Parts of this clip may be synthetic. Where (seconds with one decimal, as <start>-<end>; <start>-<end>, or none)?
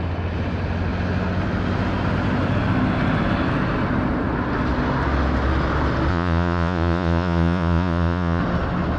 6.1-8.4